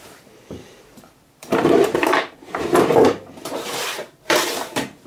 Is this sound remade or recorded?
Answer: remade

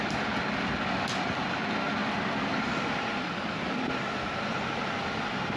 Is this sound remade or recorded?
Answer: recorded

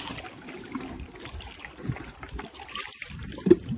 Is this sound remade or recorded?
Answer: recorded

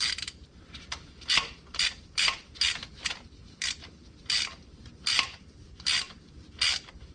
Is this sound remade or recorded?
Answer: remade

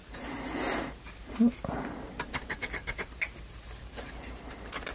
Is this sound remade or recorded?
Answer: remade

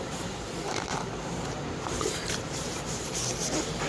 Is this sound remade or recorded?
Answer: remade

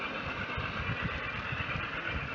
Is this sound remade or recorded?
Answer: recorded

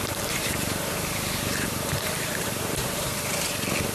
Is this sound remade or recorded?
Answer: remade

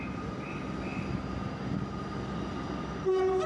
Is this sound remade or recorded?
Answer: recorded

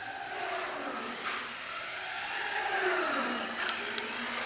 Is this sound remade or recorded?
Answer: recorded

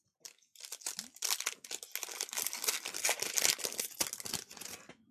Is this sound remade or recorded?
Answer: recorded